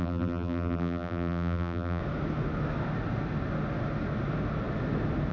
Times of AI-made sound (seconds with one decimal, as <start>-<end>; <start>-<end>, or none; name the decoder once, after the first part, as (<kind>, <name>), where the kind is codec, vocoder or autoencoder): 0.0-2.0 (vocoder, BigVGAN v2)